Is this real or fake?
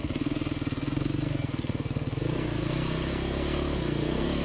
fake